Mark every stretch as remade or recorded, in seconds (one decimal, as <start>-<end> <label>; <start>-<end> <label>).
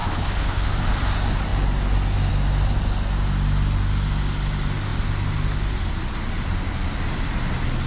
0.0-0.7 remade; 0.7-7.9 recorded